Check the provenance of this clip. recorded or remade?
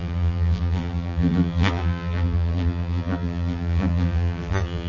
remade